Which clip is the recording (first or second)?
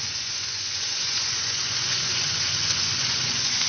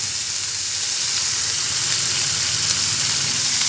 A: second